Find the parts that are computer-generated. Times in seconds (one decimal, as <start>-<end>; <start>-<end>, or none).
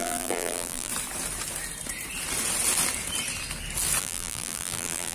0.0-0.9; 4.0-5.1